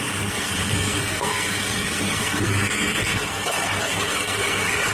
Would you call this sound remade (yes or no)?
yes